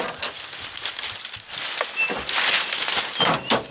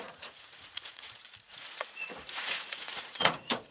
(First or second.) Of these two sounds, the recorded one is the first